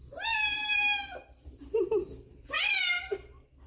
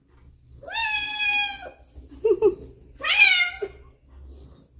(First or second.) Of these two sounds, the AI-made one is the first